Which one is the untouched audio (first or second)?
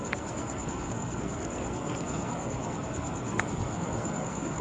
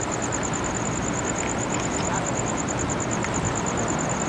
second